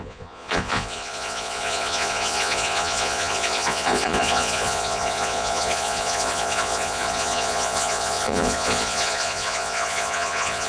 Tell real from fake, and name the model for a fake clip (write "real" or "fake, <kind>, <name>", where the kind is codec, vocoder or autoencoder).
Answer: fake, vocoder, Vocos